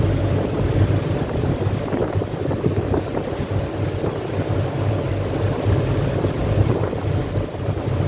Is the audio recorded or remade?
remade